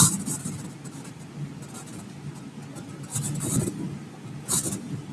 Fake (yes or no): no